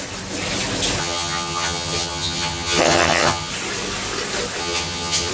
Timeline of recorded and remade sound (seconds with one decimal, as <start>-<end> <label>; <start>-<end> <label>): 0.0-1.0 recorded; 1.0-3.5 remade; 3.5-4.6 recorded; 4.6-5.3 remade